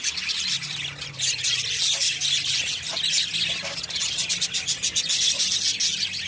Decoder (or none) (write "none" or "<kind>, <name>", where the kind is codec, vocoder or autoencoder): none